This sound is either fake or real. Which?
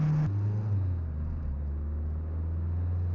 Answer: real